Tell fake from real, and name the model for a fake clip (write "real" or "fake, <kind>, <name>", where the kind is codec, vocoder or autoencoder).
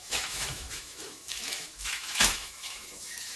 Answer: fake, autoencoder, DAC-VAE